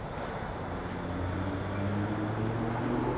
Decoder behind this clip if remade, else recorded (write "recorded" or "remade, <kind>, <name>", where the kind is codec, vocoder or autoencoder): recorded